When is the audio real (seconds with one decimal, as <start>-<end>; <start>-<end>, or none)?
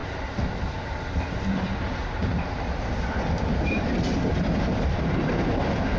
1.2-2.2; 5.2-6.0